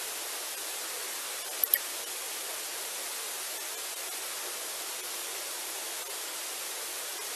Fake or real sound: real